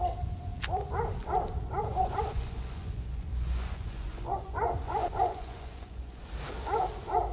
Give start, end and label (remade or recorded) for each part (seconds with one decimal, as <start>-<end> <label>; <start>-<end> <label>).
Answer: 0.0-1.9 recorded; 1.9-6.3 remade; 6.3-7.3 recorded